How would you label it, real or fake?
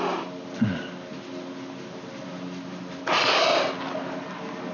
real